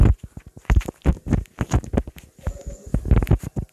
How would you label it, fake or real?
real